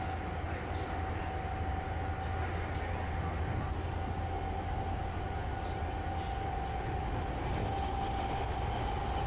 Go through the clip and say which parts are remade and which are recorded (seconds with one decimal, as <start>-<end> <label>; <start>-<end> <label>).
0.0-9.3 recorded